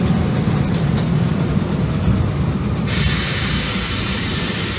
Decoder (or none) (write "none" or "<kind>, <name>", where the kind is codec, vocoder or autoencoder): vocoder, BigVGAN v2